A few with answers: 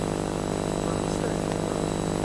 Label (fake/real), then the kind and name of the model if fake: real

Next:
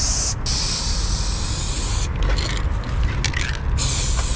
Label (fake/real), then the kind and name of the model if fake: real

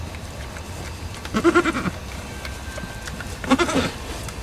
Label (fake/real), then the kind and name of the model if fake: fake, vocoder, BigVGAN v2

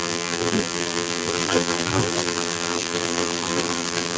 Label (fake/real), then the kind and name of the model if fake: fake, vocoder, BigVGAN v2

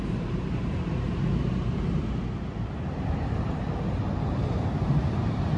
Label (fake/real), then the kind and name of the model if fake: fake, vocoder, BigVGAN v2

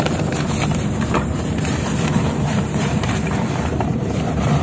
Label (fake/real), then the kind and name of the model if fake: fake, vocoder, BigVGAN v2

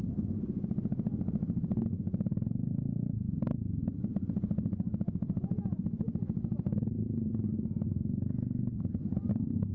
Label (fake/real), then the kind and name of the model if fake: real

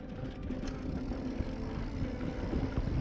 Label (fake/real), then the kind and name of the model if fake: real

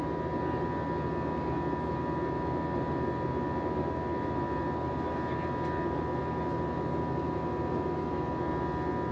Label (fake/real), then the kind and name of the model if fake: real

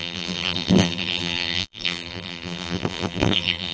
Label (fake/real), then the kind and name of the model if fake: fake, vocoder, BigVGAN v2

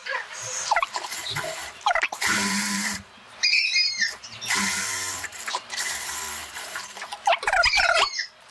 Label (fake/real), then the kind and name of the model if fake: fake, vocoder, BigVGAN v2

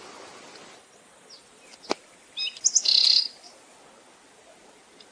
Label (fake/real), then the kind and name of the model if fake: real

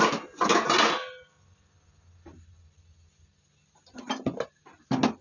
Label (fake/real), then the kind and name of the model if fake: real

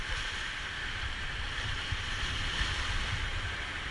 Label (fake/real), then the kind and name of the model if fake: real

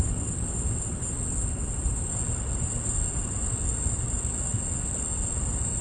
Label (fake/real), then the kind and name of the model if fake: real